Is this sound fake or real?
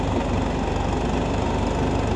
real